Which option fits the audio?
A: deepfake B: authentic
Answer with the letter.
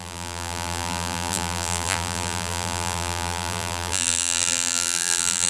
A